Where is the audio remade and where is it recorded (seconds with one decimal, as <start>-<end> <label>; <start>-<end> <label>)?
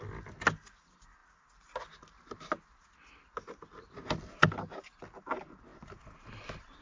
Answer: 0.0-6.8 recorded